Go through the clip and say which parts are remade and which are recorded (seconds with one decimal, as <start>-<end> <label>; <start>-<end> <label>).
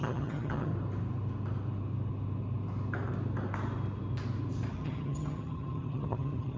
0.0-0.7 remade; 0.7-4.7 recorded; 4.7-6.6 remade